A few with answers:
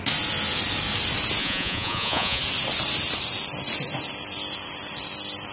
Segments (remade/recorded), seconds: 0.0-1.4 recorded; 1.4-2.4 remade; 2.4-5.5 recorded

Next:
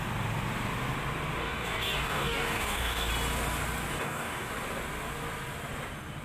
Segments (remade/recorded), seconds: 0.0-1.4 recorded; 1.4-3.1 remade; 3.1-3.9 recorded; 3.9-4.5 remade; 4.5-6.2 recorded